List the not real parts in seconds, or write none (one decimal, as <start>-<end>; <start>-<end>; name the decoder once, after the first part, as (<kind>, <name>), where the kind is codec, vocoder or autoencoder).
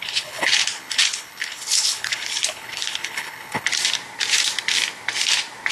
0.0-3.7 (codec, HILCodec)